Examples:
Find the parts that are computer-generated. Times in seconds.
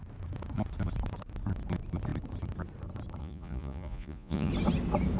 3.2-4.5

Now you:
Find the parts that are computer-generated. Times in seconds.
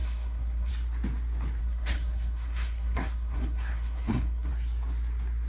0.0-0.7; 1.6-4.5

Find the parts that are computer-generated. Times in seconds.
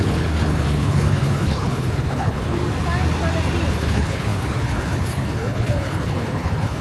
0.0-2.6; 3.7-6.8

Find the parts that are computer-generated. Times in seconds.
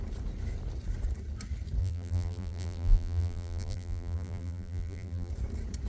1.8-5.3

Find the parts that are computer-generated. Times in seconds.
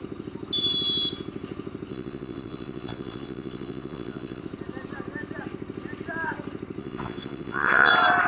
1.9-4.4; 6.8-7.9